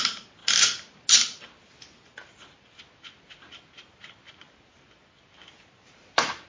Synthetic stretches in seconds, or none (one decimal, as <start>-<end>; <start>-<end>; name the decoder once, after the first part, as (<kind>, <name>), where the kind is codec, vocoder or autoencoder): none